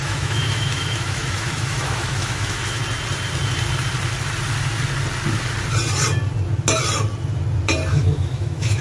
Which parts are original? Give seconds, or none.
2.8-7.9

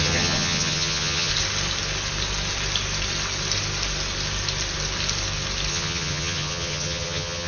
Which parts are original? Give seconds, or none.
1.3-5.7

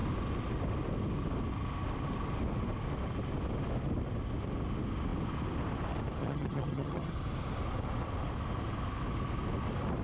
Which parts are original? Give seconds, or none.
0.0-6.2; 7.1-10.0

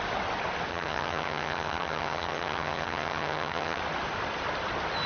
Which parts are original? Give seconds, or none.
0.0-0.7; 3.8-5.1